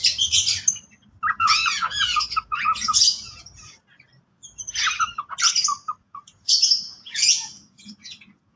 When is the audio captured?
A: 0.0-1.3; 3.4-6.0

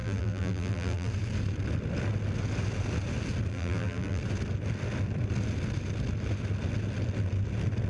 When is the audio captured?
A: 1.1-3.5; 4.2-7.9